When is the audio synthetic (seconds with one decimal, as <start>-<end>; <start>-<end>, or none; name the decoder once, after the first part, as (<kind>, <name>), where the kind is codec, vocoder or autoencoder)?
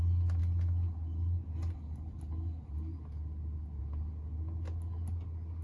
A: none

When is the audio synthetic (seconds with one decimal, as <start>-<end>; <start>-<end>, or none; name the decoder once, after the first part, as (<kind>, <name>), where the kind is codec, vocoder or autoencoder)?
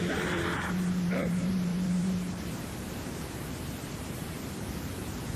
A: 0.0-5.4 (vocoder, BigVGAN v2)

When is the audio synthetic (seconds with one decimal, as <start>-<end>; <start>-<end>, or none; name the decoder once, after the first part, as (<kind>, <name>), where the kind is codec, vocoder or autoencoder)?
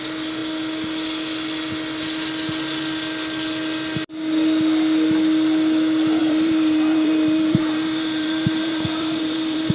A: 6.2-9.7 (vocoder, BigVGAN v2)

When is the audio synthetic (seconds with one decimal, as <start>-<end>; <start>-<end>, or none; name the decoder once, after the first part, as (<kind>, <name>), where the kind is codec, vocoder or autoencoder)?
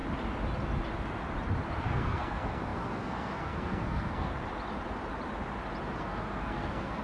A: 1.8-4.3 (codec, SNAC); 6.0-7.0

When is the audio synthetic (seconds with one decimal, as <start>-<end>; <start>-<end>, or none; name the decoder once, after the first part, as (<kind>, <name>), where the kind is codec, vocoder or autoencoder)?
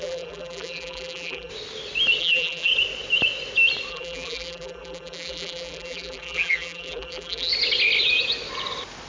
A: 0.0-1.5 (vocoder, BigVGAN v2); 2.2-2.7; 3.9-7.5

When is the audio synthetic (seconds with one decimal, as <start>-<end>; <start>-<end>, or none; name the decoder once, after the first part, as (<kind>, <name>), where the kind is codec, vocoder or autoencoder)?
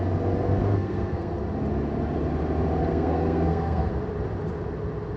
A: 0.6-1.3 (codec, SNAC); 2.9-3.9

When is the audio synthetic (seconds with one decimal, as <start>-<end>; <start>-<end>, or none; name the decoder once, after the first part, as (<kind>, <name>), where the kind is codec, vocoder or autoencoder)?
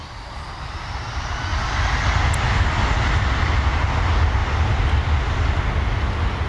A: none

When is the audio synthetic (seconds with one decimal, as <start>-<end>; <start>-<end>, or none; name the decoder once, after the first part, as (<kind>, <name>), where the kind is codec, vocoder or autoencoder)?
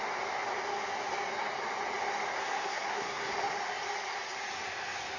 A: 2.4-3.3 (codec, SNAC)